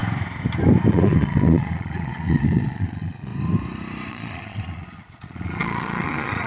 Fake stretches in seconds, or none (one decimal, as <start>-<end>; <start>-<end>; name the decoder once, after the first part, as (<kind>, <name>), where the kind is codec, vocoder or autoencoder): 0.9-3.3 (vocoder, Vocos); 4.1-6.5